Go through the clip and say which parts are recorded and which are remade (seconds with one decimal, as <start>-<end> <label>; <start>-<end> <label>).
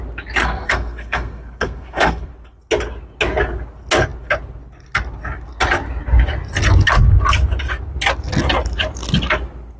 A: 0.0-0.4 recorded; 0.4-2.3 remade; 2.3-9.8 recorded